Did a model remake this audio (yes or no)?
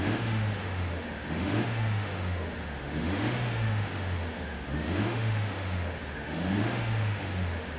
yes